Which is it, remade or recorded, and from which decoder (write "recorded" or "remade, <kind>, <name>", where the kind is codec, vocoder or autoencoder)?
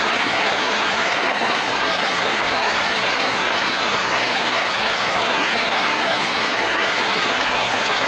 remade, codec, SNAC